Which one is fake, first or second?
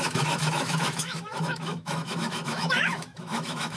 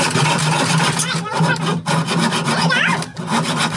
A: first